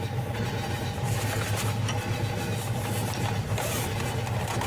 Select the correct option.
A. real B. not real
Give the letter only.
A